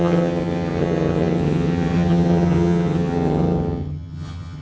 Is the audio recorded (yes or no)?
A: no